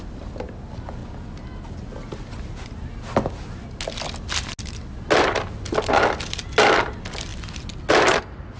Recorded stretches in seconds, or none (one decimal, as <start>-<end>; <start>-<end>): 0.0-8.6